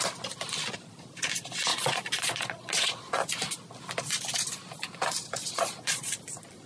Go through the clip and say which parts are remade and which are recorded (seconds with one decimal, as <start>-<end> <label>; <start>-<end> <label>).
0.0-1.7 recorded; 1.7-3.1 remade; 3.1-5.4 recorded; 5.4-6.1 remade; 6.1-6.7 recorded